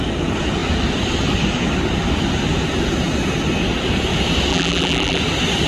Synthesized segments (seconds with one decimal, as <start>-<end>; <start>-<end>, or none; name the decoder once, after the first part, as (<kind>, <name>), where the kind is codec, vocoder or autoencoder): 4.5-5.2 (vocoder, BigVGAN v2)